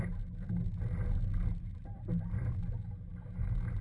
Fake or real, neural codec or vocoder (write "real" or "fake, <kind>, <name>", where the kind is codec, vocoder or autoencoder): real